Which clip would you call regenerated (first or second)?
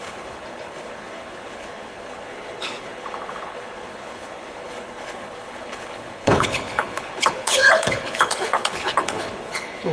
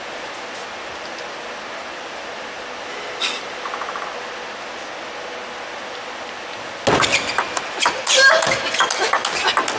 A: first